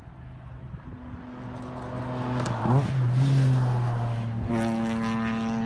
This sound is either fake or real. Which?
real